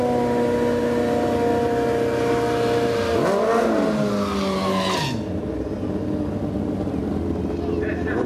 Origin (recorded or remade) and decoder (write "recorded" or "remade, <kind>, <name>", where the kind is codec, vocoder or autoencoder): recorded